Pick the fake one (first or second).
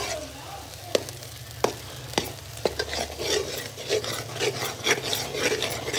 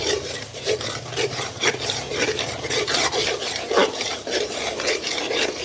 second